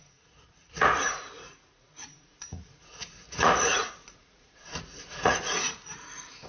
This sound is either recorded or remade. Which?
remade